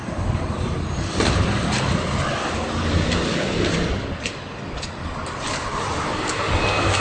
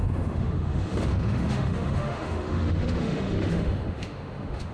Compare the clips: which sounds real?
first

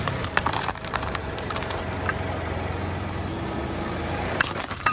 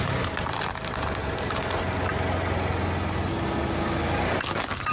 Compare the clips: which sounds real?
second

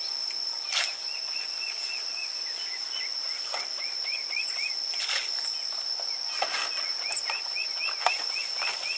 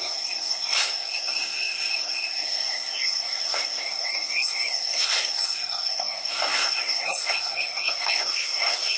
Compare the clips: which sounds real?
first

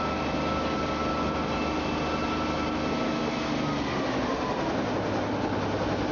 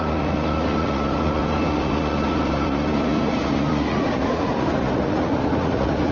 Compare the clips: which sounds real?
first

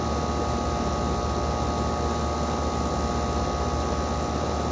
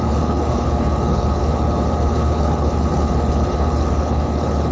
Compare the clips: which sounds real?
first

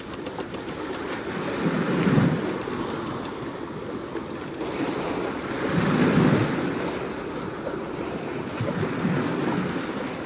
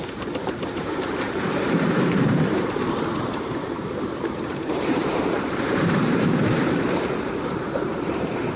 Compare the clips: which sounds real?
first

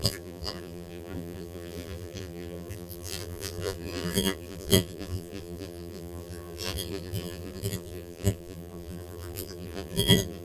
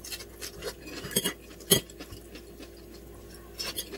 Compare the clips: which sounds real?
second